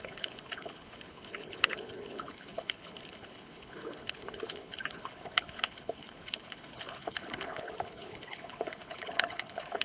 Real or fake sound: fake